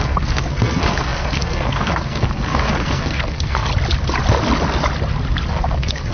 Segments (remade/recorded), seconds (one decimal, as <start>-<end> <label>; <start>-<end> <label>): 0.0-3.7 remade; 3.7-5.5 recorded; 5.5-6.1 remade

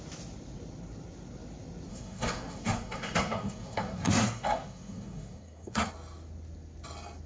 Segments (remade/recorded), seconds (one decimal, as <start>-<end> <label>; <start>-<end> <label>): 0.0-1.9 recorded; 1.9-5.9 remade; 5.9-7.3 recorded

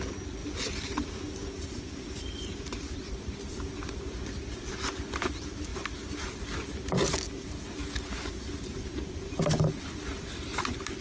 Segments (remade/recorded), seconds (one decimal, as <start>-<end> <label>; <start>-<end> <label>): 0.0-0.4 remade; 0.4-2.5 recorded; 2.5-5.7 remade; 5.7-8.5 recorded; 8.5-11.0 remade

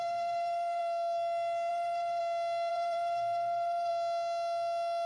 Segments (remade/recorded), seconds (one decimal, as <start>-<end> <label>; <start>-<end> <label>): 0.0-0.8 remade; 0.8-1.7 recorded; 1.7-2.2 remade; 2.2-2.7 recorded; 2.7-3.9 remade; 3.9-5.1 recorded

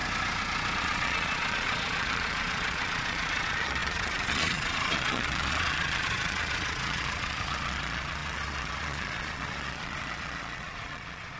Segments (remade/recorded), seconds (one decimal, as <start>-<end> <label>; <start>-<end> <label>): 0.0-0.8 recorded; 0.8-11.4 remade

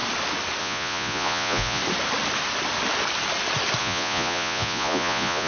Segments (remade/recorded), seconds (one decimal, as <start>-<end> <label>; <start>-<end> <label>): 0.0-0.6 recorded; 0.6-1.8 remade; 1.8-3.8 recorded; 3.8-5.5 remade